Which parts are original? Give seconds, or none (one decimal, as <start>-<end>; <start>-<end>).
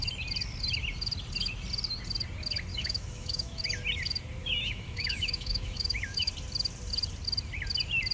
0.0-2.7; 3.6-4.4; 6.3-8.1